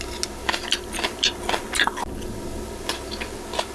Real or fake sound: real